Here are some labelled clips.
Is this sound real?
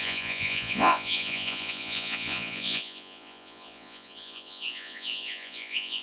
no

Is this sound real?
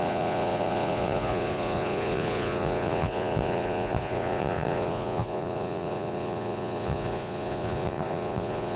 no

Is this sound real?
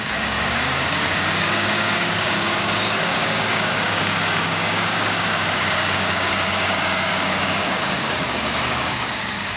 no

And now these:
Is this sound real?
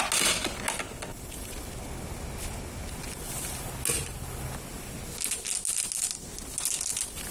yes